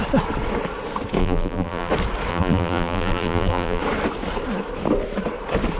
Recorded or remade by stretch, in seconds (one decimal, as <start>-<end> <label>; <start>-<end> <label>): 0.0-1.2 recorded; 1.2-1.9 remade; 1.9-2.3 recorded; 2.3-3.8 remade; 3.8-5.8 recorded